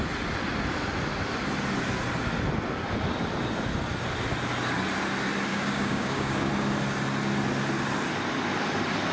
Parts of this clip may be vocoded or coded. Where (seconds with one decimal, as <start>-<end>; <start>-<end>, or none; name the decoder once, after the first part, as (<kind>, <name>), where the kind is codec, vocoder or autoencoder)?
5.5-6.5 (codec, DAC)

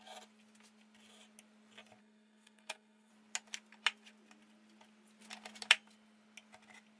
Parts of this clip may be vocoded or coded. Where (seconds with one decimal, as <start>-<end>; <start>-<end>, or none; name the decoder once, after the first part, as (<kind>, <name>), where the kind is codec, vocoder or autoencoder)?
2.0-3.1 (codec, SNAC)

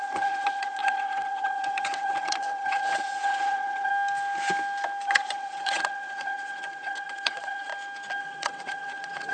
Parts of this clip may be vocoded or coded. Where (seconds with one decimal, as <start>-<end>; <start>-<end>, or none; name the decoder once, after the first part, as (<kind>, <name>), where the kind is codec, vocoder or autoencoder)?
0.0-3.9 (vocoder, WaveNeXt); 5.1-7.7; 8.2-9.3

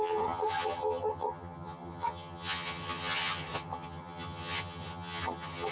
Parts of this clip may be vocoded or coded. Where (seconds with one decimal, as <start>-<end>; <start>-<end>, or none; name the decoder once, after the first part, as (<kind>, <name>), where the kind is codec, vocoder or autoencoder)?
0.0-5.7 (vocoder, HiFi-GAN)

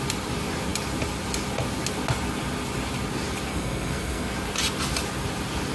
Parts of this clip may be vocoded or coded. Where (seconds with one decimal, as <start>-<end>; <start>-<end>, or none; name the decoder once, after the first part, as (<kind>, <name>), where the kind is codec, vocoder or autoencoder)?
3.5-4.3 (codec, SNAC)

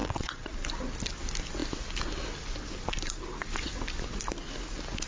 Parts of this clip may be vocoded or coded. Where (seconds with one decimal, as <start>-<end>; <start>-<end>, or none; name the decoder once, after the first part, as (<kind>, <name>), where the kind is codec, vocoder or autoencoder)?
0.0-0.5 (vocoder, WaveNeXt)

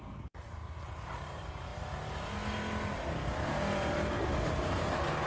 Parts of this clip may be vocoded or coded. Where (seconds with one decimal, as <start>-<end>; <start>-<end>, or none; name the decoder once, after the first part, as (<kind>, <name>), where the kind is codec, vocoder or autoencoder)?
none

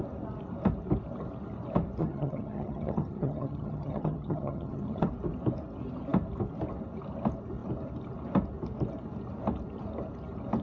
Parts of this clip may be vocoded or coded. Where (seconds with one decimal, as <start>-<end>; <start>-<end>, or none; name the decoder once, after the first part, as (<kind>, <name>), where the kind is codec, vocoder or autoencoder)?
2.0-5.1 (vocoder, HiFi-GAN)